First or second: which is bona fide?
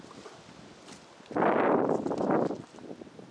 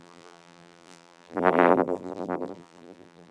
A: first